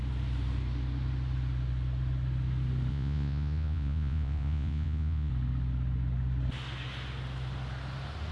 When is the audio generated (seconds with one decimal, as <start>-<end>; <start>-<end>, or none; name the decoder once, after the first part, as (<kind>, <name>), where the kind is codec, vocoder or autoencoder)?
2.9-5.3 (vocoder, Vocos)

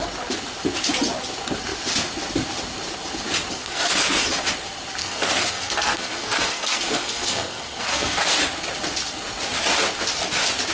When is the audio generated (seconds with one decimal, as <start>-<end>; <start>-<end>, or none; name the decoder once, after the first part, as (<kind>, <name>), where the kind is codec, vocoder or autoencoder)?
3.5-4.3 (codec, SNAC); 5.0-8.4